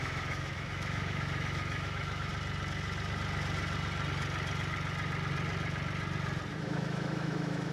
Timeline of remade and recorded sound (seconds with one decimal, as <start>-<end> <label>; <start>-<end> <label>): 0.0-2.3 remade; 2.3-6.5 recorded; 6.5-7.7 remade